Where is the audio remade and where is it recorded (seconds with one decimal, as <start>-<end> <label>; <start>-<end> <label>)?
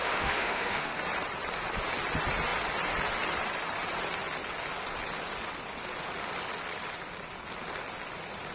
0.0-1.0 remade; 1.0-8.5 recorded